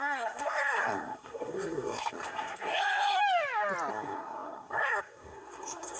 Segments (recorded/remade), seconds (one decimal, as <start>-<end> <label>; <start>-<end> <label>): 0.0-3.2 remade; 3.2-3.9 recorded; 3.9-6.0 remade